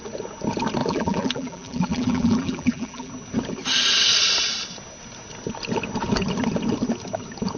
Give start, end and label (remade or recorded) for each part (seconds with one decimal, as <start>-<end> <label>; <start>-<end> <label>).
0.0-0.8 recorded; 0.8-3.1 remade; 3.1-7.6 recorded